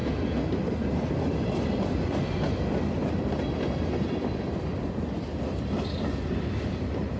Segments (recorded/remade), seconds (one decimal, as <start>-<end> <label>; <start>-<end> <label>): 0.0-7.2 recorded